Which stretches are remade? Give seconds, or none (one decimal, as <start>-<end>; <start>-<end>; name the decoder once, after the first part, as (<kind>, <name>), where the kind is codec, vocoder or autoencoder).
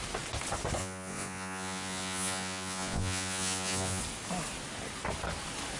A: 0.8-4.0 (vocoder, Vocos)